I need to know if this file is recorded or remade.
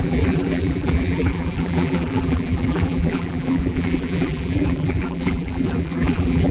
remade